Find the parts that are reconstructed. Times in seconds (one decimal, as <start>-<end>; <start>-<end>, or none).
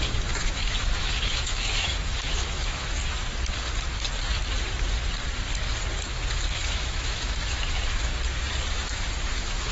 0.0-3.0; 6.1-8.1; 8.7-9.7